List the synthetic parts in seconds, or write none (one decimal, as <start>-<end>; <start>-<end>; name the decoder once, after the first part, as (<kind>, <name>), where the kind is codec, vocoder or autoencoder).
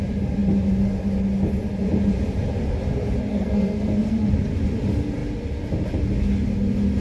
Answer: 3.3-4.3 (codec, SNAC)